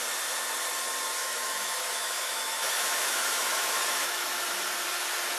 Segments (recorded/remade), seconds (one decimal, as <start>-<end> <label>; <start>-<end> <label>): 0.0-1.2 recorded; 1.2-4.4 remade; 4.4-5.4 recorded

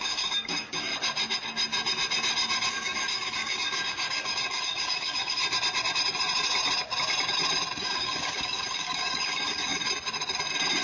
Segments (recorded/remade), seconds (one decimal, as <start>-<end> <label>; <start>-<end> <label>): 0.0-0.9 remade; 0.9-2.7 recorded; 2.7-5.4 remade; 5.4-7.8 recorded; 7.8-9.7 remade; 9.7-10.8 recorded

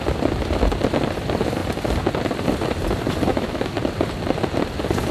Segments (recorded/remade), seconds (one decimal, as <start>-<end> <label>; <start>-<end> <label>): 0.0-3.3 recorded; 3.3-3.8 remade; 3.8-5.1 recorded

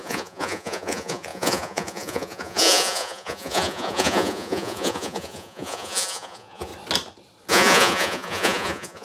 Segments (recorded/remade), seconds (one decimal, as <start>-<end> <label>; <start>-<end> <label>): 0.0-6.7 remade; 6.7-7.5 recorded; 7.5-9.0 remade